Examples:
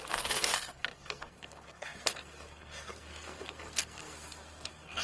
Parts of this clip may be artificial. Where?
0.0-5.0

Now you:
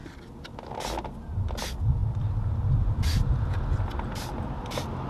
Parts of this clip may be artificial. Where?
none

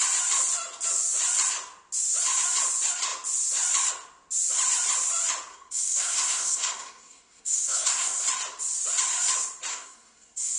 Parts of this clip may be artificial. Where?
5.5-8.2; 9.7-10.6

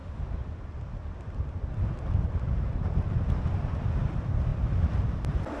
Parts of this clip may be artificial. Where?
none

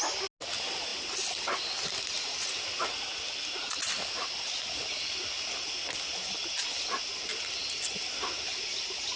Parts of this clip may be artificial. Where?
none